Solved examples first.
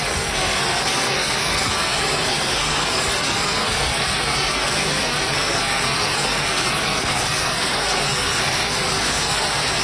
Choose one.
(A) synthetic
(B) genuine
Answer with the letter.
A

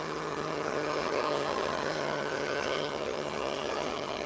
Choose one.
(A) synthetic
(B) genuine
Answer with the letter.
A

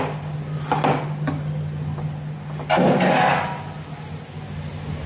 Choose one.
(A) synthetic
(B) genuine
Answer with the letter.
B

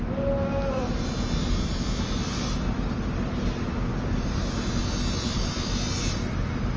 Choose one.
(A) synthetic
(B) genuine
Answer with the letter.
B